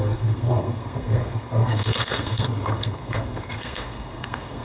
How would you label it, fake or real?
fake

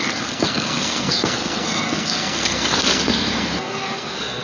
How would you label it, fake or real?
fake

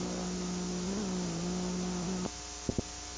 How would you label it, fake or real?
real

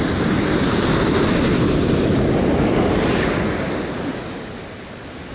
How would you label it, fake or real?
real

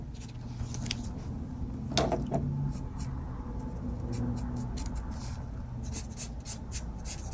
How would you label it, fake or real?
real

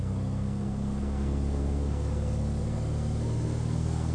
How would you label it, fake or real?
fake